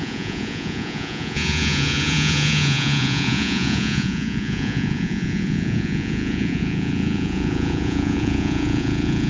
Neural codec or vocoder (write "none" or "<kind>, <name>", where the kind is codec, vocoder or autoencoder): vocoder, Vocos